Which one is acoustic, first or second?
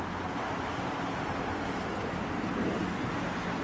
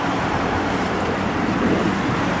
first